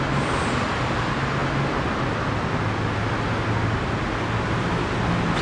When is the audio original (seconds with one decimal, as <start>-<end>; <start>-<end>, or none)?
0.0-5.4